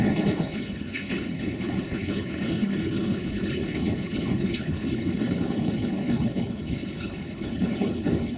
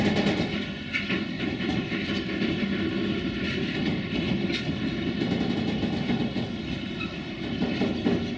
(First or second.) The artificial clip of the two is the first